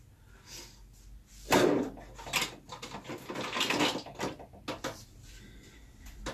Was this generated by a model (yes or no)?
no